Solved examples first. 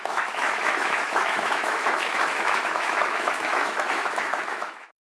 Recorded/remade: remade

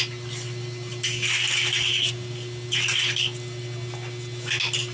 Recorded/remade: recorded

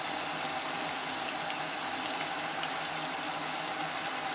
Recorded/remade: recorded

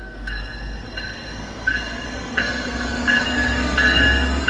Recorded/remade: remade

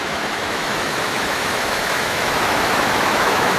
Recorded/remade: remade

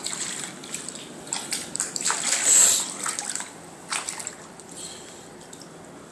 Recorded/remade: remade